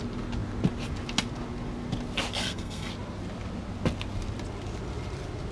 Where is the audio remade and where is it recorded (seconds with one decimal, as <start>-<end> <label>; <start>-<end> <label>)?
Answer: 0.0-2.4 recorded; 2.4-2.9 remade; 2.9-5.5 recorded